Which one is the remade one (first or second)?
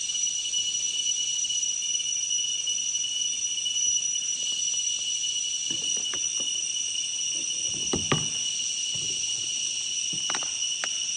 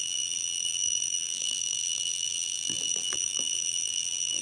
second